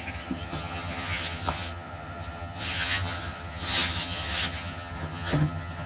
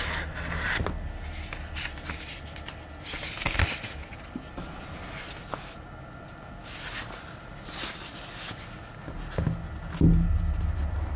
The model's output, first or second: first